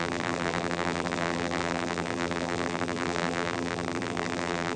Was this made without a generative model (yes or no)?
no